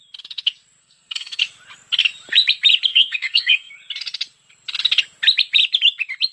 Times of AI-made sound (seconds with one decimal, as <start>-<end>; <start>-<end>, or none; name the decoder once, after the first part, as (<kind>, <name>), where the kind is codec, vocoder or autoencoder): 0.8-1.4 (codec, SNAC); 2.9-3.7